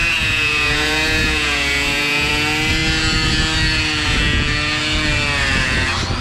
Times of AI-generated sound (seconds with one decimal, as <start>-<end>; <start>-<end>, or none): 0.0-2.3